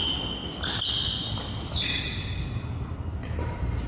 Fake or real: real